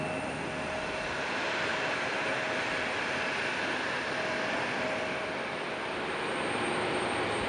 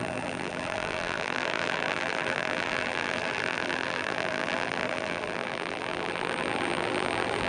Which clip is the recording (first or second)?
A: first